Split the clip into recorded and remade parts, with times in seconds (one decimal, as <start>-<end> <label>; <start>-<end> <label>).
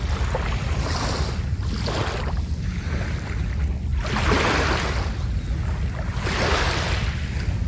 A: 0.0-7.7 recorded